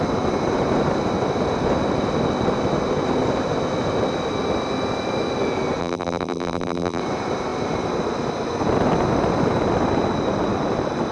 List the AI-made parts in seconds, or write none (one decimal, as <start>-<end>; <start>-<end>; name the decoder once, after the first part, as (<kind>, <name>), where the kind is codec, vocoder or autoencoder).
5.8-7.0 (vocoder, BigVGAN v2)